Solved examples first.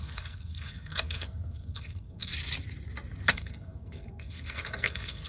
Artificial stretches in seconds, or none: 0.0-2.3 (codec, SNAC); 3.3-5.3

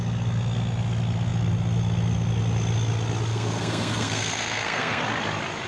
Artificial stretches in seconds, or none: 3.3-5.0 (codec, SNAC)

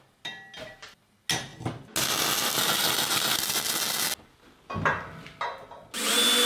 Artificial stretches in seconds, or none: none